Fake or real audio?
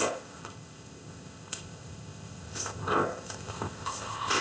fake